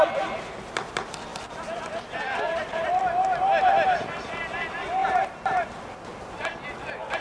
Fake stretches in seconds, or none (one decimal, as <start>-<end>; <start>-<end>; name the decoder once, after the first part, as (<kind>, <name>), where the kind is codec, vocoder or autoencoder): 1.3-3.0 (vocoder, BigVGAN v2)